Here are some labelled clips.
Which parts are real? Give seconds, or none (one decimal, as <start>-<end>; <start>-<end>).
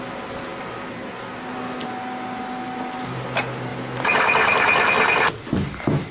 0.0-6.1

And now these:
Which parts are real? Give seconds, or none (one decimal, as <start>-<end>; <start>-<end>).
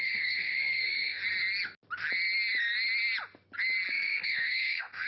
1.2-3.9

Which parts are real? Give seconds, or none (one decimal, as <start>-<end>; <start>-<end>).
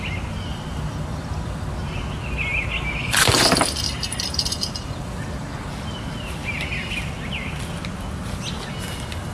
0.0-0.5; 1.7-3.0; 5.7-9.3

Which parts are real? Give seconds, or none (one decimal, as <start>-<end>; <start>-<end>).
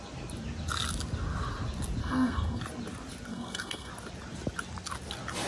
0.0-2.0; 2.6-3.3; 3.9-5.5